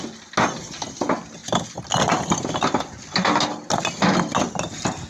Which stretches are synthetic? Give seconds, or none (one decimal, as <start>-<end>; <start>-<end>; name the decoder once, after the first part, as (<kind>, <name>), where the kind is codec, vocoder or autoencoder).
none

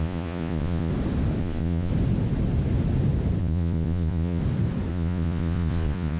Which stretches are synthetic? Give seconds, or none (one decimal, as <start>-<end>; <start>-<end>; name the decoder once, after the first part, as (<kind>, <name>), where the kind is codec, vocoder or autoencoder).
0.0-0.9 (vocoder, Vocos); 1.4-1.9; 3.4-4.4; 4.9-6.2

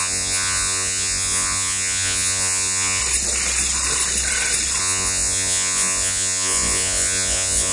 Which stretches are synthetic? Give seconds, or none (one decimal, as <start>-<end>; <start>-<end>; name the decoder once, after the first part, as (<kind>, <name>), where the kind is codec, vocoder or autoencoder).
0.0-3.0 (vocoder, Vocos); 4.8-7.7

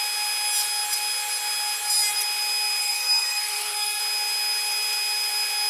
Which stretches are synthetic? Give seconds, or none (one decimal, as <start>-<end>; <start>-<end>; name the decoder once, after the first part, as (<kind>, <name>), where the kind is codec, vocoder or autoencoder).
2.8-4.0 (codec, SNAC)